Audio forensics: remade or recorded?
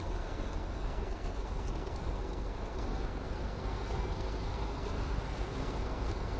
remade